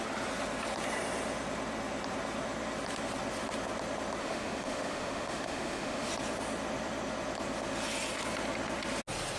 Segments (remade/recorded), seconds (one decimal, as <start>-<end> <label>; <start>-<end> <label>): 0.0-4.2 recorded; 4.2-6.1 remade; 6.1-9.4 recorded